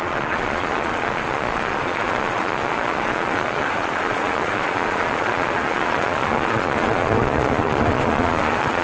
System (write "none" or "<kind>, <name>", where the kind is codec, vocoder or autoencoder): vocoder, Vocos